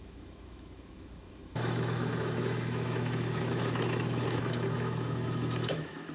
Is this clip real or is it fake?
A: fake